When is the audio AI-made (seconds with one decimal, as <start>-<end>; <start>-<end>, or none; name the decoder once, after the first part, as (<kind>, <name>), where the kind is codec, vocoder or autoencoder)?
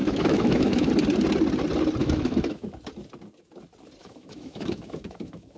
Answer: 0.0-0.9 (autoencoder, DAC-VAE); 2.0-2.7; 4.0-5.6